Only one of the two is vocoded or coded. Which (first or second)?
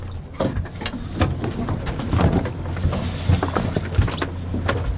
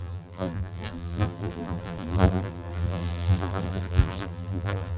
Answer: second